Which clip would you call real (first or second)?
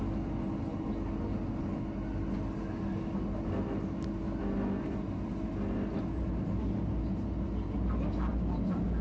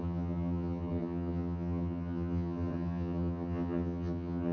first